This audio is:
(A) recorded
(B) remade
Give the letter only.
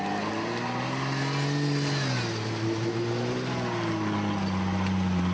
A